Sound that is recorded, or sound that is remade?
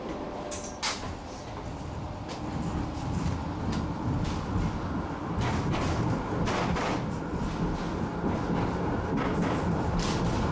recorded